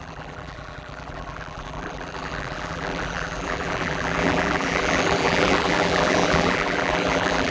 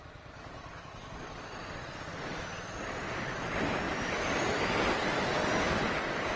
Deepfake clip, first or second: first